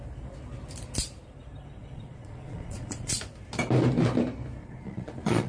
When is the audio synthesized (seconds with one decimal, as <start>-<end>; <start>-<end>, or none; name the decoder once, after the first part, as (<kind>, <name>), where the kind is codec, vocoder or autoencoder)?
1.8-3.2 (vocoder, Vocos); 4.6-5.5